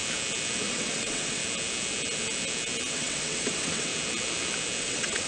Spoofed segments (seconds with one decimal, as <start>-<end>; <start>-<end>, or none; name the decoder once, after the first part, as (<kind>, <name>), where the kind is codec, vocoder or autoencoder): 0.7-1.4 (vocoder, WaveNeXt); 2.9-3.9; 4.8-5.3